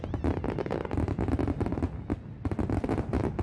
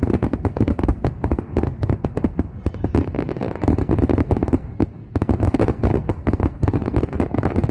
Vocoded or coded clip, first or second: second